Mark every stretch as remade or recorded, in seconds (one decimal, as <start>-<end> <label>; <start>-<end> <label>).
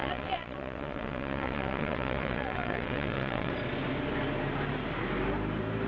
0.0-3.5 remade; 3.5-5.9 recorded